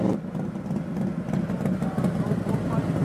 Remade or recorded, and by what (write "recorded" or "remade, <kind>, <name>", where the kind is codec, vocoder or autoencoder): recorded